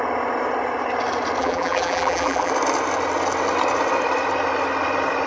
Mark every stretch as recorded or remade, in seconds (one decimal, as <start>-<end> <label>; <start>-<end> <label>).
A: 0.0-1.4 recorded; 1.4-2.5 remade; 2.5-5.3 recorded